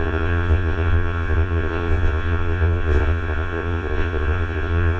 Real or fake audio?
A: fake